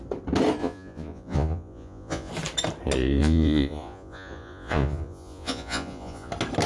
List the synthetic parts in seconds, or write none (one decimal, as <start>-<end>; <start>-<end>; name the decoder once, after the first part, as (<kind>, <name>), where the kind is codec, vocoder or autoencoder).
0.6-2.3 (vocoder, Vocos); 3.2-6.3